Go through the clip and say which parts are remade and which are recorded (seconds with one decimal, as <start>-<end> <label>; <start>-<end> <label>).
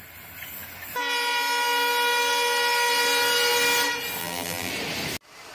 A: 0.0-4.2 recorded; 4.2-4.7 remade; 4.7-5.5 recorded